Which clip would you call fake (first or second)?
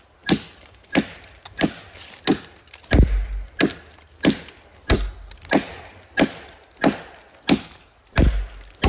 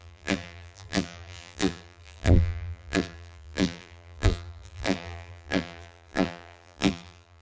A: second